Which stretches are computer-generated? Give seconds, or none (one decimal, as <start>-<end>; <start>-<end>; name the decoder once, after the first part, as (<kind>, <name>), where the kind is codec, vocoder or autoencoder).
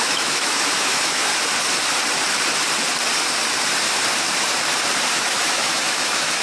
0.0-1.3 (autoencoder, DAC-VAE); 5.1-6.4